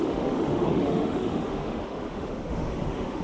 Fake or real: fake